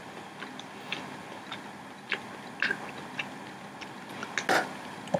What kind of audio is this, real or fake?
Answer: real